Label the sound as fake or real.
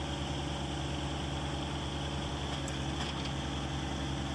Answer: real